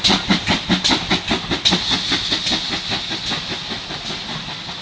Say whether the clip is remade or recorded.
recorded